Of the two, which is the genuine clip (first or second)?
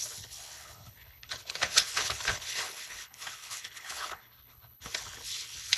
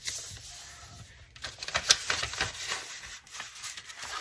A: second